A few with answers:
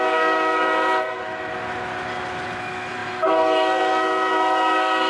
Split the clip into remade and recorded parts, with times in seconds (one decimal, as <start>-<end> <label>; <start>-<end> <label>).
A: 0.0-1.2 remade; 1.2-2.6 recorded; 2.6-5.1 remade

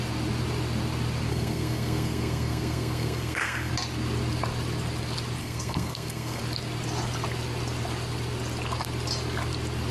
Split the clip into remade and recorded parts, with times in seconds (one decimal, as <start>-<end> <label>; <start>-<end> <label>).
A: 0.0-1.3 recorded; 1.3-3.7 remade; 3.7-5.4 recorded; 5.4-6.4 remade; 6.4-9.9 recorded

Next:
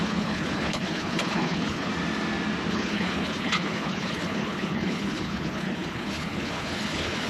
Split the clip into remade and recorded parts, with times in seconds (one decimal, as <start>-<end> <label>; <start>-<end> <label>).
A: 0.0-1.9 remade; 1.9-2.7 recorded; 2.7-7.3 remade